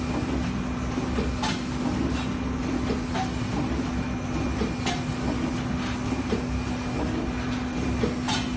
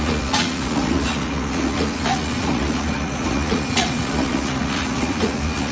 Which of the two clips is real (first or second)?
first